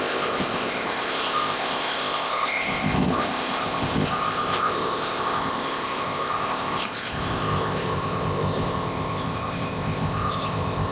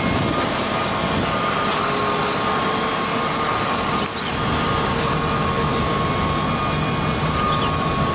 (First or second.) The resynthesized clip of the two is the first